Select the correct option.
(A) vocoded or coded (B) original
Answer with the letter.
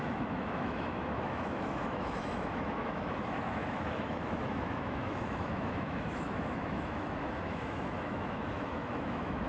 A